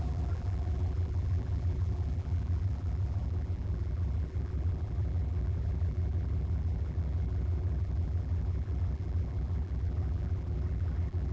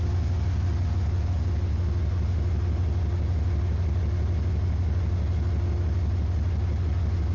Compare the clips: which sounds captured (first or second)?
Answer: second